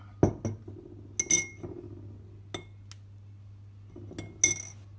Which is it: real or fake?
real